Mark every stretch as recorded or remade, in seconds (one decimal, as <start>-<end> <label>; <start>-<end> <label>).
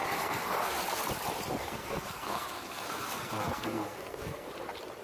0.0-1.0 remade; 1.0-1.6 recorded; 1.6-4.5 remade; 4.5-5.0 recorded